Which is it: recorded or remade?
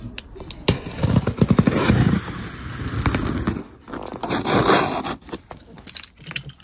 recorded